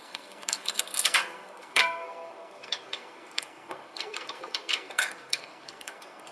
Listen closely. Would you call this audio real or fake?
fake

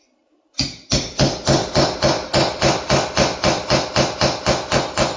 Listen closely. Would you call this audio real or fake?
real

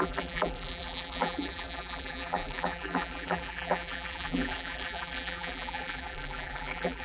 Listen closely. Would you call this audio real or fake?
fake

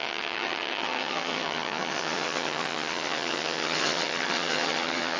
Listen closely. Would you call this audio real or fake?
fake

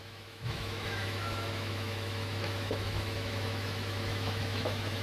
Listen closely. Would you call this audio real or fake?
fake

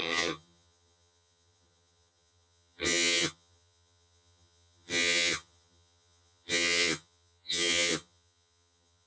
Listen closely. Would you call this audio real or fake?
fake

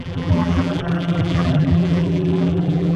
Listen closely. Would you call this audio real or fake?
fake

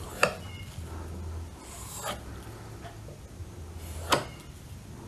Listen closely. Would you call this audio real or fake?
real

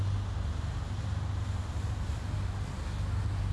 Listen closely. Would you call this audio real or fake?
real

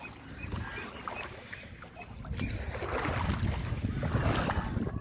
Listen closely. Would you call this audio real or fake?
real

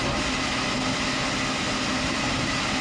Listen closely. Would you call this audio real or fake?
real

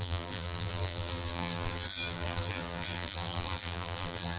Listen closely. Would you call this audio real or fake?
fake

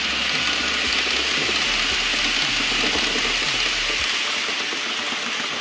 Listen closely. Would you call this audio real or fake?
real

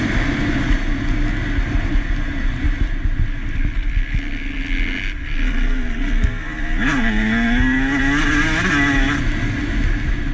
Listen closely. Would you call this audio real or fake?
real